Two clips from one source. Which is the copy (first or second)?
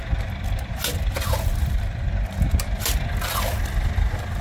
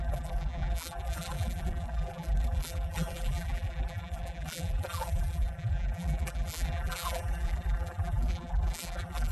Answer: second